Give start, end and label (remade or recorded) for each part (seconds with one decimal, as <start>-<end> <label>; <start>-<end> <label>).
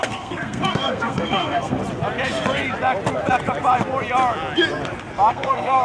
0.0-1.8 remade; 1.8-5.3 recorded; 5.3-5.8 remade